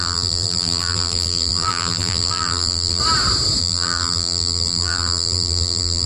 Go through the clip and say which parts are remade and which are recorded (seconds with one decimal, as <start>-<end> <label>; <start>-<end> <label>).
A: 0.0-3.0 remade; 3.0-3.6 recorded; 3.6-6.1 remade